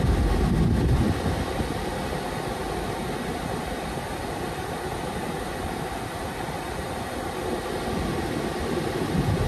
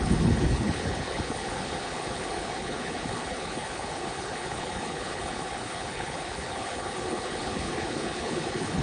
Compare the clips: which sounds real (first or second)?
first